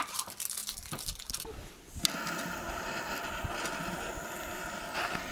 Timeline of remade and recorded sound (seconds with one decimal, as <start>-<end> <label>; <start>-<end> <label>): 0.0-5.3 recorded